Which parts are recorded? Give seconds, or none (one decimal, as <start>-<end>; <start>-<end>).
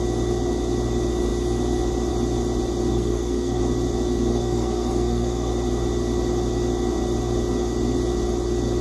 0.0-2.9; 3.6-4.3; 5.5-8.8